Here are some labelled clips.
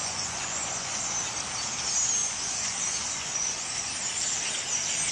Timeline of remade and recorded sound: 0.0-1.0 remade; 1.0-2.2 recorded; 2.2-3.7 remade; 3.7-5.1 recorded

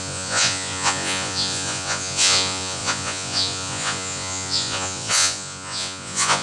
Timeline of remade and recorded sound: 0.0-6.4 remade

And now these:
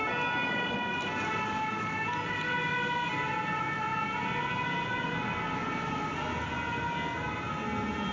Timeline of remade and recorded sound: 0.0-8.1 recorded

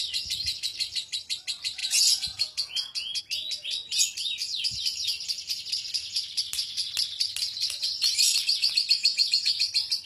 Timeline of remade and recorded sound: 0.0-1.8 recorded; 1.8-3.2 remade; 3.2-9.0 recorded; 9.0-9.6 remade; 9.6-10.1 recorded

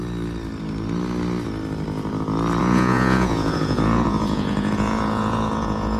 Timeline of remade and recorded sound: 0.0-2.6 recorded; 2.6-6.0 remade

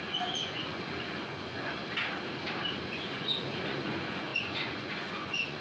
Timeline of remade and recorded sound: 0.0-1.8 remade; 1.8-2.9 recorded; 2.9-5.6 remade

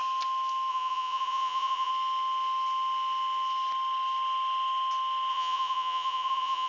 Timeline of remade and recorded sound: 0.0-0.7 recorded; 0.7-1.9 remade; 1.9-5.3 recorded; 5.3-6.7 remade